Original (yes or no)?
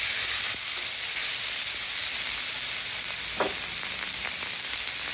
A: yes